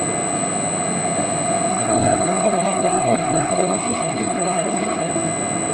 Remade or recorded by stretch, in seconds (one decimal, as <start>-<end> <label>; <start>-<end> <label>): 0.0-1.7 recorded; 1.7-5.1 remade; 5.1-5.7 recorded

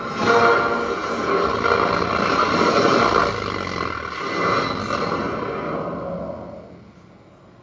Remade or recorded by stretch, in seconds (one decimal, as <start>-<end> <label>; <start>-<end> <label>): 0.0-7.6 recorded

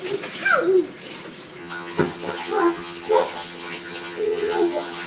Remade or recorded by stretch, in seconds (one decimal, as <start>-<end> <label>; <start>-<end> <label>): 0.0-1.6 recorded; 1.6-5.1 remade

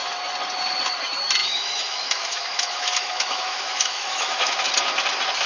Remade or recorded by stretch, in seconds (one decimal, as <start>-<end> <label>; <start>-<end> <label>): 0.0-1.4 recorded; 1.4-4.7 remade; 4.7-5.5 recorded